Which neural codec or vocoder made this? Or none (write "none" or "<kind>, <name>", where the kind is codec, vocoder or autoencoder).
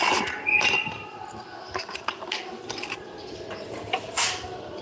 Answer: none